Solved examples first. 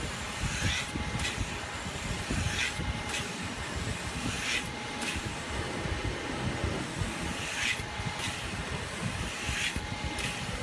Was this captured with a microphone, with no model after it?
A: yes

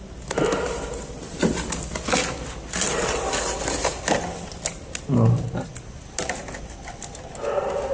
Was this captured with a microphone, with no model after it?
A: yes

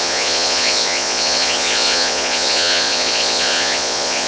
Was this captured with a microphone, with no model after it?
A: no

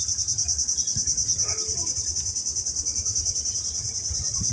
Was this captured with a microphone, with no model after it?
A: no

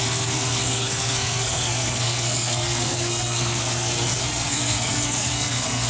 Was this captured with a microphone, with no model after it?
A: no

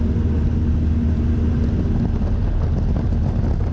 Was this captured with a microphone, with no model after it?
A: yes